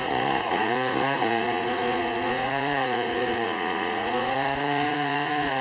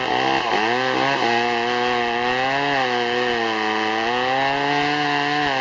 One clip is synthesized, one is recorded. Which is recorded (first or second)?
second